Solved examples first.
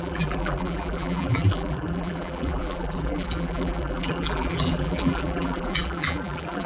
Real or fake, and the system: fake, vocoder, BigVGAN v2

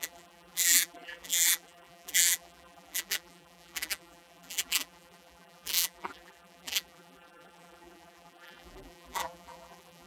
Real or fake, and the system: fake, vocoder, BigVGAN v2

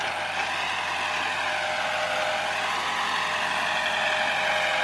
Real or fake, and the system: real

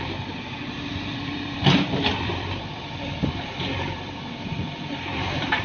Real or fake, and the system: fake, vocoder, BigVGAN v2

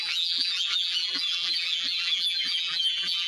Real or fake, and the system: fake, vocoder, BigVGAN v2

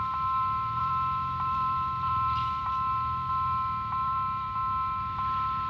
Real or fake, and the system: fake, vocoder, BigVGAN v2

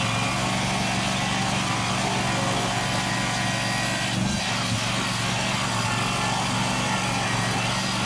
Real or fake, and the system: real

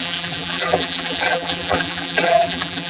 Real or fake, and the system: fake, vocoder, BigVGAN v2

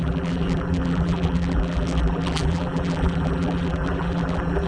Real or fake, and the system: fake, vocoder, BigVGAN v2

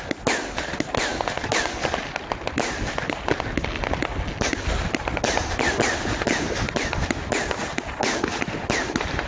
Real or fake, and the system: real